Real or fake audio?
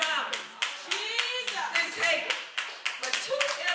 fake